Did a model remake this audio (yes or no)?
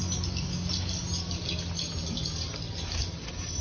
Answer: no